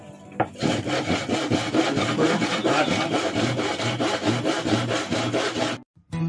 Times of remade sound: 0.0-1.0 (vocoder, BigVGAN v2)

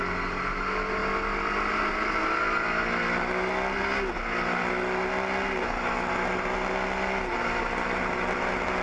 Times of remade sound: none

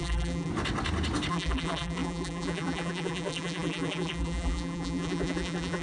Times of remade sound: 0.0-0.5 (vocoder, BigVGAN v2); 1.3-5.8